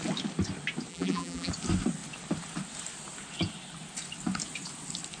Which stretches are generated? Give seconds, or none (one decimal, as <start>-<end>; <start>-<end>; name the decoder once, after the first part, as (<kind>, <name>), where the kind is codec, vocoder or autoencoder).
0.9-1.5 (vocoder, BigVGAN v2)